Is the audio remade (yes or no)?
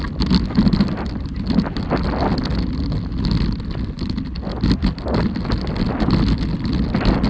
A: no